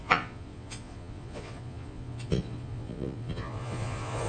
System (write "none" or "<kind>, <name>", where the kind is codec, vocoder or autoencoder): vocoder, Vocos